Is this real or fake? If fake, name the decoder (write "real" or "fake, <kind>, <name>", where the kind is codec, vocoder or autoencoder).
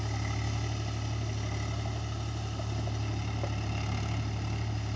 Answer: real